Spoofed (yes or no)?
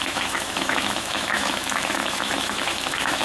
yes